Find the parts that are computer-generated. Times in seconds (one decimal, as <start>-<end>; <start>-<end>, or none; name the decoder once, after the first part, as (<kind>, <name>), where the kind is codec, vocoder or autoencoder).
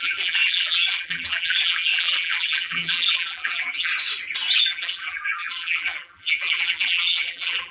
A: 0.0-3.9 (vocoder, BigVGAN v2); 4.6-7.7